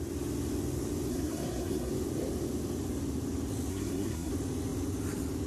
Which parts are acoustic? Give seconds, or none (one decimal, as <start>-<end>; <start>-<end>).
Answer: 0.0-1.1; 1.9-3.7; 4.3-5.5